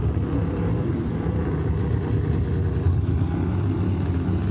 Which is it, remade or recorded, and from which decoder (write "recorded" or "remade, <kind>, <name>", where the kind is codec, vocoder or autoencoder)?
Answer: recorded